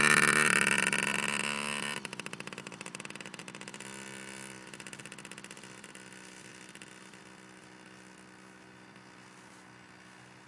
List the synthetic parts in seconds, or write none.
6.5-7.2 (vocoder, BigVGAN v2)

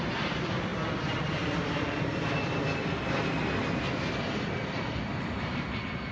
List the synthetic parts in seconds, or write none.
0.0-0.7 (vocoder, BigVGAN v2); 4.4-6.1

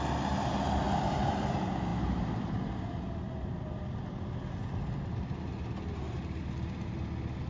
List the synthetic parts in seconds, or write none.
none

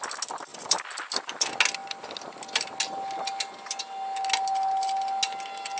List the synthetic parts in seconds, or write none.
0.5-1.4 (vocoder, BigVGAN v2)

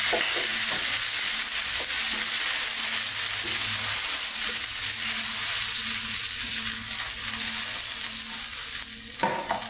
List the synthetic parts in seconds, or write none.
none